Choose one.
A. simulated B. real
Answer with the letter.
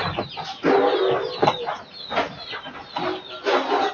B